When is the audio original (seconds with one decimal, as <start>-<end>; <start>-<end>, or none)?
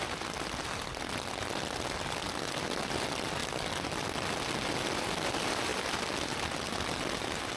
0.0-7.6